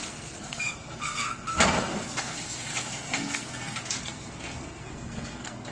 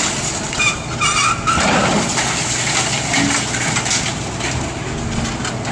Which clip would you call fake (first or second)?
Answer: first